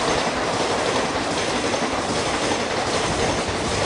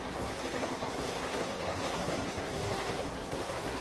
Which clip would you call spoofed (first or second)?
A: second